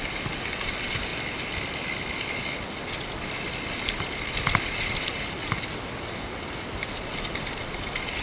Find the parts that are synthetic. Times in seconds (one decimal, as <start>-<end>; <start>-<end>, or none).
none